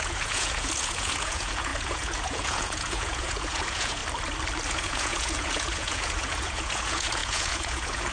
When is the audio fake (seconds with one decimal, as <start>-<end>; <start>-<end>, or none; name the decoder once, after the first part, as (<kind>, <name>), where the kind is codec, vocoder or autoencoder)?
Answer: 0.0-4.0 (vocoder, Vocos); 4.7-8.1